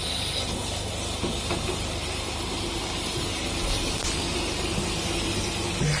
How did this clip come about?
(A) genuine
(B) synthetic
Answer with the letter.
A